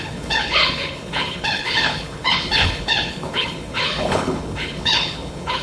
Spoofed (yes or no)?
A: yes